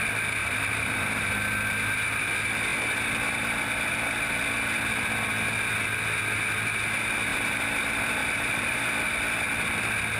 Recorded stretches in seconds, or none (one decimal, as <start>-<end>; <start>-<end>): 0.0-0.4; 1.3-7.3; 7.8-8.2; 8.8-10.2